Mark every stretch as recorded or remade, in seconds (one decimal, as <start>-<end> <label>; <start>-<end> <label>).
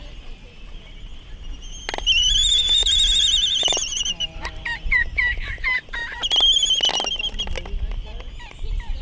0.0-1.1 remade; 1.1-2.2 recorded; 2.2-6.0 remade; 6.0-8.4 recorded; 8.4-9.0 remade